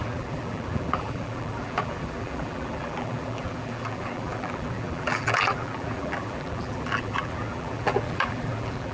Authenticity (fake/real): fake